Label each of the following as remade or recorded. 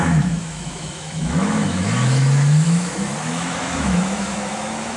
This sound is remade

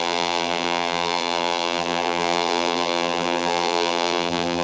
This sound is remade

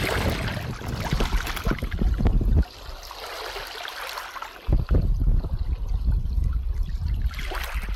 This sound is recorded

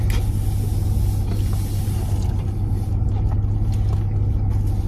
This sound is recorded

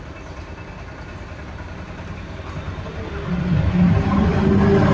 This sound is recorded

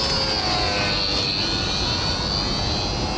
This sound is recorded